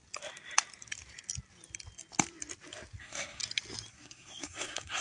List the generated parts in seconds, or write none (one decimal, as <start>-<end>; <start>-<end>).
3.0-3.4; 3.9-5.0